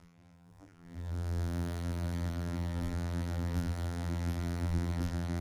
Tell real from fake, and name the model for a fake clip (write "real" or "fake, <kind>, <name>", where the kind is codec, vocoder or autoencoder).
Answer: fake, vocoder, BigVGAN v2